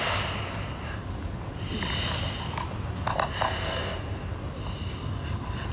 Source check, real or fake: real